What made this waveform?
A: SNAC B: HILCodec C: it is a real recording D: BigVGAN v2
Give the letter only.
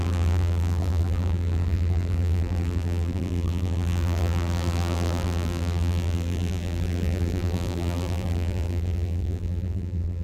D